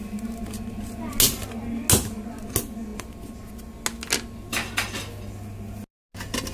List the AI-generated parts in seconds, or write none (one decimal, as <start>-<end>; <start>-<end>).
none